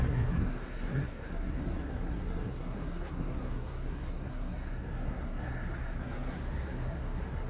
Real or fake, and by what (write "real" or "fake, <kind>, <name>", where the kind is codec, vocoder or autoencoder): fake, codec, SNAC